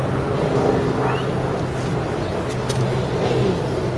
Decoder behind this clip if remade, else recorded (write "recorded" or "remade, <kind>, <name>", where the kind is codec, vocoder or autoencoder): recorded